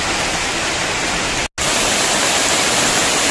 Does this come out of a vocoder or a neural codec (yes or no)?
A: no